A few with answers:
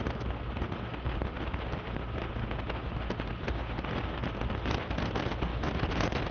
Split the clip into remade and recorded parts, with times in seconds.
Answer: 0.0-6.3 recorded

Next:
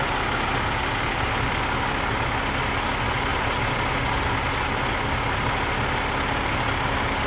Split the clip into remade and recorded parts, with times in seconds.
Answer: 0.0-3.3 recorded; 3.3-3.8 remade; 3.8-7.3 recorded